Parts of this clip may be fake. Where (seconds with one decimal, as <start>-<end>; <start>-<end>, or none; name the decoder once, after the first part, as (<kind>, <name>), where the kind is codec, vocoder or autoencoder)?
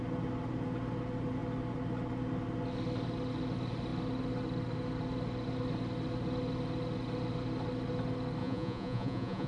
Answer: 8.4-9.5 (vocoder, Vocos)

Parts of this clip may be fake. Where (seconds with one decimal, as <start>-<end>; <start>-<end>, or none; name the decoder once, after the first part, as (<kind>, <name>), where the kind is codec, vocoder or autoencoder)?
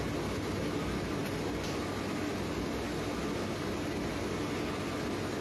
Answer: none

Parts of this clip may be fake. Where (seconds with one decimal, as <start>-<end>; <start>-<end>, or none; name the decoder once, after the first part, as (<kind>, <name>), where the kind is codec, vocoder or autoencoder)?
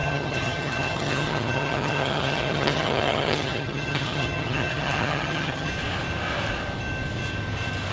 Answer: 0.0-5.7 (vocoder, HiFi-GAN)